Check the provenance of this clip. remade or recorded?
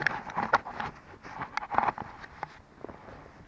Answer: recorded